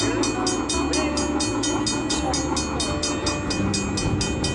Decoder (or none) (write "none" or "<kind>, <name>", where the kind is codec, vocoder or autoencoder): none